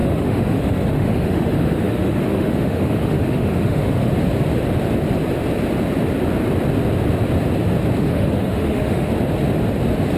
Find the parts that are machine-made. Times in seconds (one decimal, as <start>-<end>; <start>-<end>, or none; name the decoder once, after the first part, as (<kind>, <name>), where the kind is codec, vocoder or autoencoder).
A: 0.0-4.1 (autoencoder, DAC-VAE); 8.0-9.1